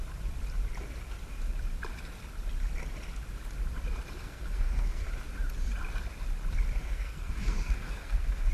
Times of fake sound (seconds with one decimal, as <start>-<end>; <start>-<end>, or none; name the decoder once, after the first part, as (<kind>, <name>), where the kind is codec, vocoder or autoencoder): 4.2-5.1 (codec, SNAC); 6.8-8.5